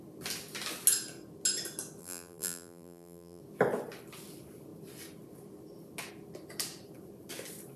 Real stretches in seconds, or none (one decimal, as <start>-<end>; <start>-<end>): 0.0-2.0; 3.4-7.8